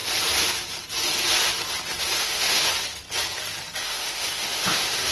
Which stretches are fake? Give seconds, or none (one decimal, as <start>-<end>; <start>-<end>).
2.2-2.7; 3.8-5.1

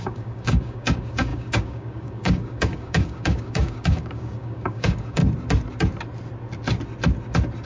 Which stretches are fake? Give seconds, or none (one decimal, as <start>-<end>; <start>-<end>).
0.0-5.2

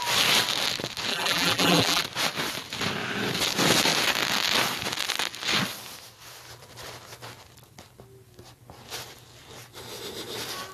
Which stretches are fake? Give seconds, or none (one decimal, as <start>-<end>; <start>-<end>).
1.1-2.0

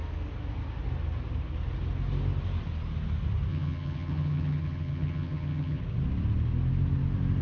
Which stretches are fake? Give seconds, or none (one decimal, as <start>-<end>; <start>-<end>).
3.5-5.8

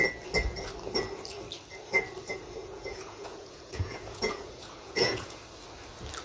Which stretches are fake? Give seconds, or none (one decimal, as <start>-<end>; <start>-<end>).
2.6-5.4

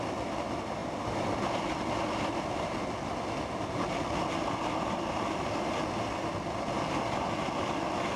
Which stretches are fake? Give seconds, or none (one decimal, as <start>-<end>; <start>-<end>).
none

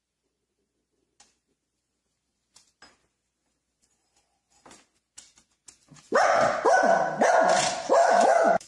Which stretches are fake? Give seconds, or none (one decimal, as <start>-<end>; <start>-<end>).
8.0-8.7